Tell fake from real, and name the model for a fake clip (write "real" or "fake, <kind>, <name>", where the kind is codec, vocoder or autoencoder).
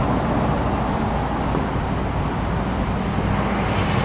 real